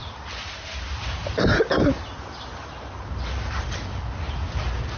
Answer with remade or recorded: recorded